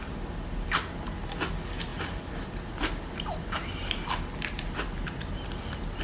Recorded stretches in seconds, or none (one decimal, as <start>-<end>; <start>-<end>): 0.0-6.0